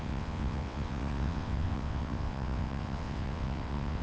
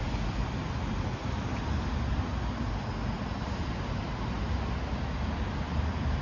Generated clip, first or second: first